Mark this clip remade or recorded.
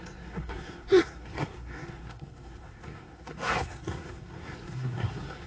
remade